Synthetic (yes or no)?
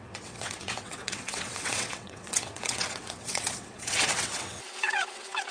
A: yes